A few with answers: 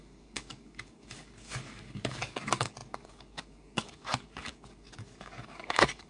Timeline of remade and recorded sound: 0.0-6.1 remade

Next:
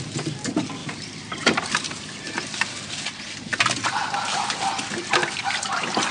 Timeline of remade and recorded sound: 0.0-0.8 recorded; 0.8-2.2 remade; 2.2-3.5 recorded; 3.5-5.4 remade; 5.4-6.1 recorded

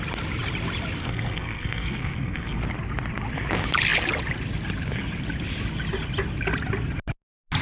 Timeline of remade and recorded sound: 0.0-1.0 recorded; 1.0-2.6 remade; 2.6-7.6 recorded

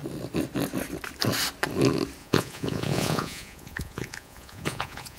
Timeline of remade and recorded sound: 0.0-2.2 recorded; 2.2-5.2 remade

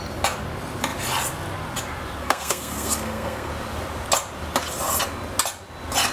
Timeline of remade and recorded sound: 0.0-2.2 recorded; 2.2-3.5 remade; 3.5-6.1 recorded

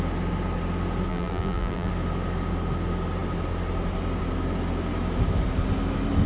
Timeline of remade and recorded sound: 0.0-1.1 recorded; 1.1-1.9 remade; 1.9-6.3 recorded